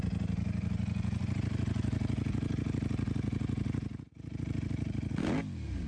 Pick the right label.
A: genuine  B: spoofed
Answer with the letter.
A